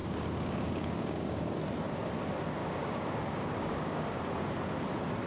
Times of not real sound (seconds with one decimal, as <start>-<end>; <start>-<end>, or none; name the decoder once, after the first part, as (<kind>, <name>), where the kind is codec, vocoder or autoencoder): 0.0-1.6 (codec, DAC); 2.6-4.2